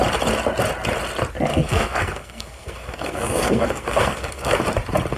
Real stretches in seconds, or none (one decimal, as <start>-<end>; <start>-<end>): 0.0-1.5; 4.6-5.2